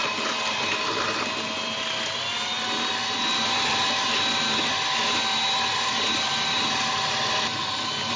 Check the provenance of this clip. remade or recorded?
recorded